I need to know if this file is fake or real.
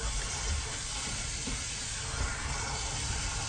real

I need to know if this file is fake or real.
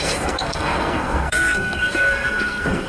fake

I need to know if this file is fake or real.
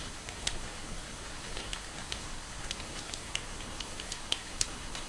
fake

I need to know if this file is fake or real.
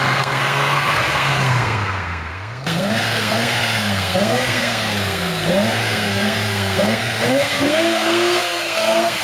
fake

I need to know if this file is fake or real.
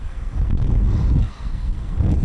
fake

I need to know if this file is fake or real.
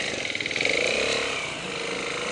real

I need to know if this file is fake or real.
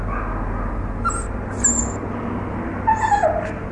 real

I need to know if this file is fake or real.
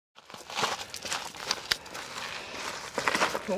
real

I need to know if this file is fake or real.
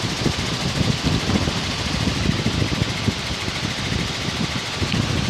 real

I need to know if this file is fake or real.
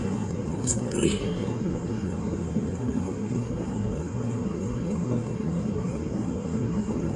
fake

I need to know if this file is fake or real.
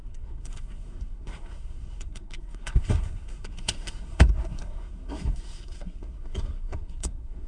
fake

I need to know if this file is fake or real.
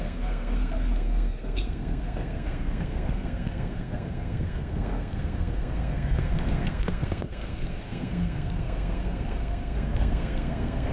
fake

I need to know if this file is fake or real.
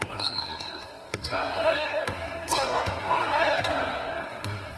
fake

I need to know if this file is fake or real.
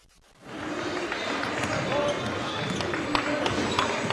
real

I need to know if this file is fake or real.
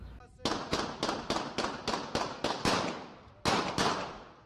real